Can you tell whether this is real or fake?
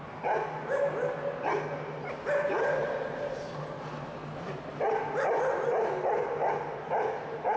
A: real